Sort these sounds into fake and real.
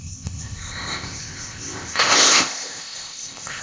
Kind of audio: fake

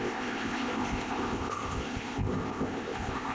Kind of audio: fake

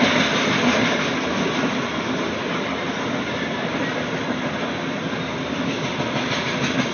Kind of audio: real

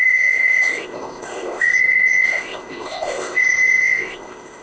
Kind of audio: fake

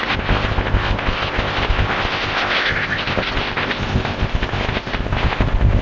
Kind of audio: fake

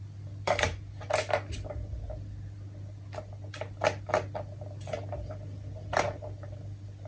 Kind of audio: real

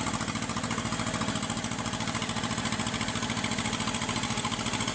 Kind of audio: real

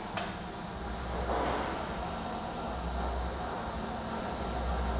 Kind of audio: real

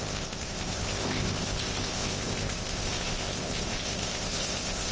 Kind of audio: fake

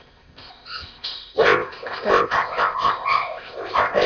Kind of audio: fake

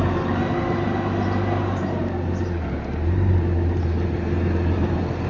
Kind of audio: real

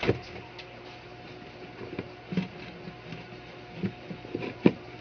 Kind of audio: real